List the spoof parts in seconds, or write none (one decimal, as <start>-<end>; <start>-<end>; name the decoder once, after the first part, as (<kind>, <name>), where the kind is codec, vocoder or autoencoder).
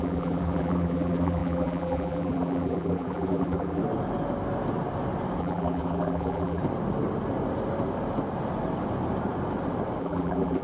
0.0-3.8 (vocoder, BigVGAN v2); 5.4-6.6; 10.0-10.6